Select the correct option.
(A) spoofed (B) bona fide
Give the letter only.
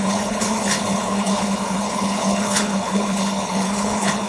A